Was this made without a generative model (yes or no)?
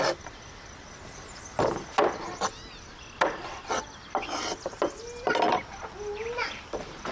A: yes